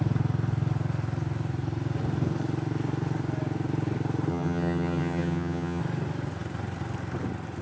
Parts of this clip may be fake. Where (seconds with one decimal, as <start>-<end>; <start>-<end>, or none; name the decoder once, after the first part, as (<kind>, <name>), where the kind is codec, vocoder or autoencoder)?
4.3-5.8 (vocoder, HiFi-GAN)